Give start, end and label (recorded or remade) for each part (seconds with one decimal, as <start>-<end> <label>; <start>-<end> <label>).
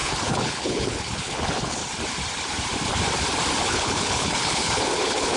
0.0-1.8 remade; 1.8-3.6 recorded; 3.6-5.4 remade